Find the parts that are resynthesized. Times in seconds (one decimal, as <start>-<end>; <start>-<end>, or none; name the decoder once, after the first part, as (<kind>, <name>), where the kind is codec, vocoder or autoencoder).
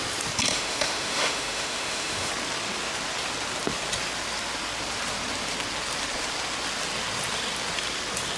0.5-2.3 (autoencoder, DAC-VAE)